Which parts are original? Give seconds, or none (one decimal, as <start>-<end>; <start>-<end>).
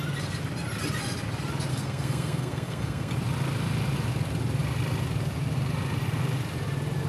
0.0-1.7; 3.1-7.1